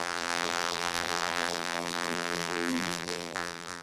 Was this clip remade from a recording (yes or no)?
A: yes